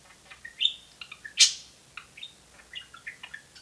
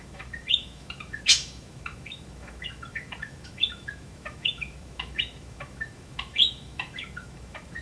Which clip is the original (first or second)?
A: first